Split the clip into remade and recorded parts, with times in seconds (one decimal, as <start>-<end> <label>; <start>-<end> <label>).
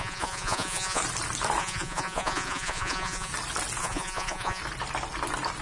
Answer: 0.0-1.0 remade; 1.0-1.6 recorded; 1.6-3.3 remade; 3.3-3.8 recorded; 3.8-4.6 remade; 4.6-5.6 recorded